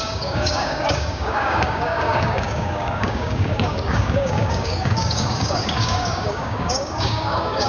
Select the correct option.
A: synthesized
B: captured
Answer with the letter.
A